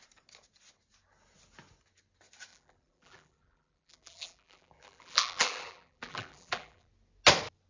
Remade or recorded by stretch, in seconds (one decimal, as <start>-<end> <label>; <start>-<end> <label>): 0.0-2.5 recorded; 2.5-6.9 remade; 6.9-7.7 recorded